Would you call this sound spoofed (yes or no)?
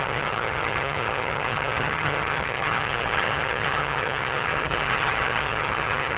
yes